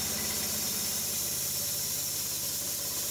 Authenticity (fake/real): real